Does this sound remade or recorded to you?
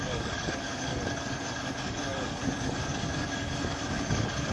remade